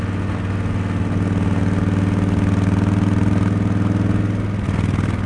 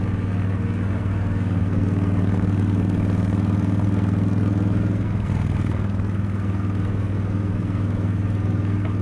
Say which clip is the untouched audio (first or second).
first